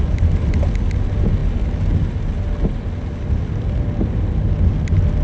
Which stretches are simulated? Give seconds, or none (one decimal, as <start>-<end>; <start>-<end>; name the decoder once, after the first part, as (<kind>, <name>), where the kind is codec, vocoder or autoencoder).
none